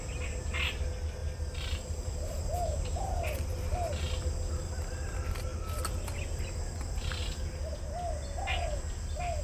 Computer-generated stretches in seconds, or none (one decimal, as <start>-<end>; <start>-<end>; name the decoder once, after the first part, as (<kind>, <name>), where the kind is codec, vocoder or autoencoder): 1.2-3.9 (vocoder, BigVGAN v2)

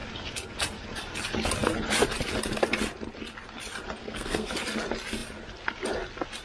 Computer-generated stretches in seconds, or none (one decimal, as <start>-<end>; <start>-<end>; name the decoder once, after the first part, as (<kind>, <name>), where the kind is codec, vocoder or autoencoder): 4.0-4.5 (codec, SNAC)

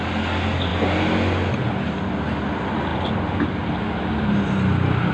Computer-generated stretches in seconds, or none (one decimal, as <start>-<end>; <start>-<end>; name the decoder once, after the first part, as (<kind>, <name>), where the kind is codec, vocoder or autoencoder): none